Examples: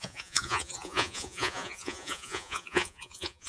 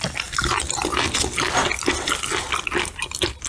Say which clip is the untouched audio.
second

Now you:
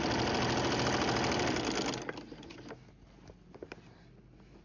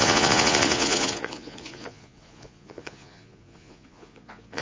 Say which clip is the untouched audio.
first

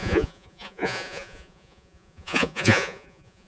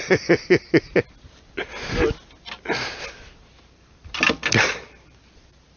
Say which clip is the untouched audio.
second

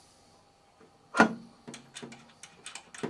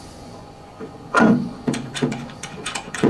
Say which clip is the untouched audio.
first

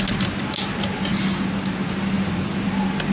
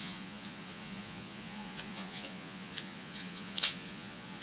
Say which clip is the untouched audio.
first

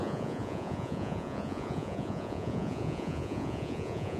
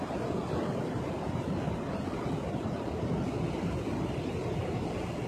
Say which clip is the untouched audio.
second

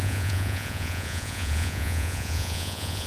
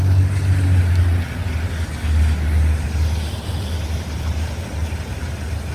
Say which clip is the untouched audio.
second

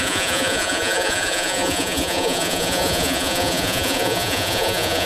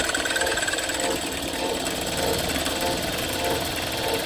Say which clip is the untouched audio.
second